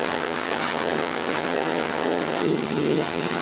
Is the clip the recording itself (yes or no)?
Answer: no